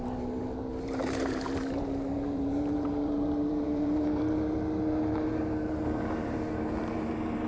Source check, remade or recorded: remade